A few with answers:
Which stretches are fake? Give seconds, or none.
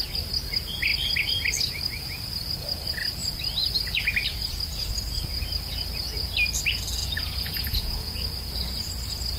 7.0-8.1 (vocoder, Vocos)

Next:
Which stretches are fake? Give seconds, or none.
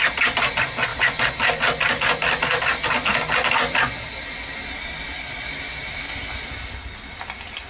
none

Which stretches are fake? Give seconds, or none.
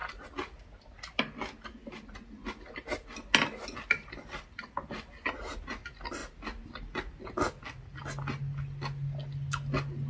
none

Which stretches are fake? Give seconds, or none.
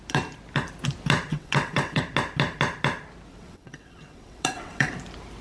1.3-2.0 (vocoder, WaveNeXt); 3.3-4.9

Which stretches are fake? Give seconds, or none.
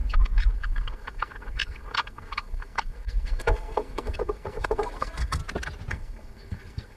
0.0-5.4 (codec, SNAC); 5.9-7.0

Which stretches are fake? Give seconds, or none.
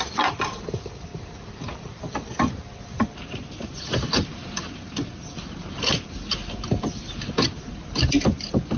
none